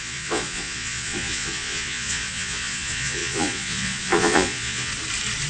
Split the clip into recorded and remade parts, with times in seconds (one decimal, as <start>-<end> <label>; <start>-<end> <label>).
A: 0.0-4.9 remade; 4.9-5.5 recorded